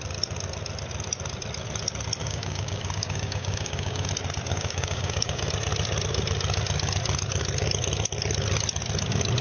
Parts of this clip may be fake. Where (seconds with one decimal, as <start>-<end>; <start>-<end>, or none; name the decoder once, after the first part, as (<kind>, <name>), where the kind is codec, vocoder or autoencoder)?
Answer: 2.2-4.1 (codec, DAC); 4.5-5.5